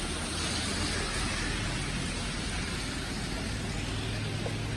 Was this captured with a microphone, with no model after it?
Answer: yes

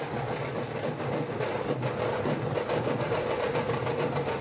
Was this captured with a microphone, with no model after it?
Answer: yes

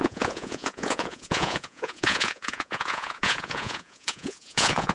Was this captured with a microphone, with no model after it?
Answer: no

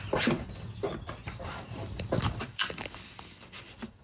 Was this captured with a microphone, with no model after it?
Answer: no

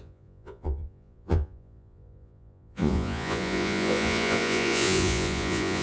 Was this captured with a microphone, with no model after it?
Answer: no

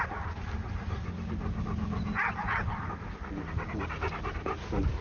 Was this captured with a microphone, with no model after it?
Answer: yes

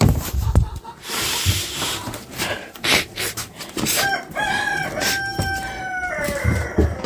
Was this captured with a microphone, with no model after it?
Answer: no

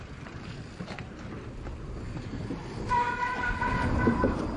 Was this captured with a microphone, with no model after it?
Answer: yes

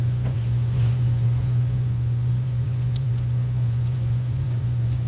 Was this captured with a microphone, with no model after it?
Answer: no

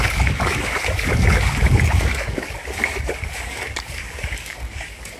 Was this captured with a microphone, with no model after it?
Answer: no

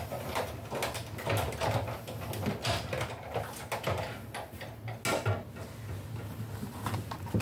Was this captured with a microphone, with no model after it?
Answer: yes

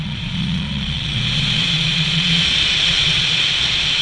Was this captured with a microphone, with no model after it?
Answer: no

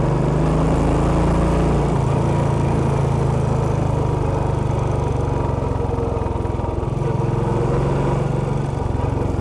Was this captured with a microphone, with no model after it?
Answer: yes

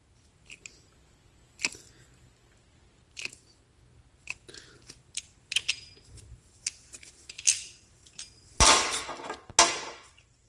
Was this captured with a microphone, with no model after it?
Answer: yes